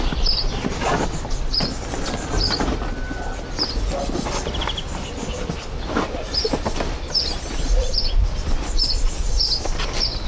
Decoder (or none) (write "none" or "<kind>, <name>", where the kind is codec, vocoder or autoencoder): vocoder, BigVGAN v2